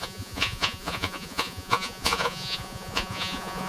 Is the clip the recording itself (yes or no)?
no